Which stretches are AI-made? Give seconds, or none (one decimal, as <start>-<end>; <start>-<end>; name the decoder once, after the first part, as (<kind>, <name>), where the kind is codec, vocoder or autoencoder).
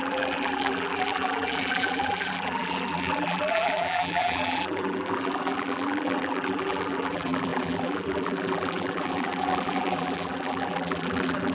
0.0-11.5 (vocoder, BigVGAN v2)